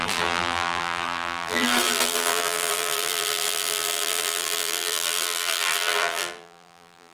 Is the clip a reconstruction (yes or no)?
yes